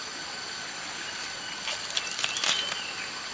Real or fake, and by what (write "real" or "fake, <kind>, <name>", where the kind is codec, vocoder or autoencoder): real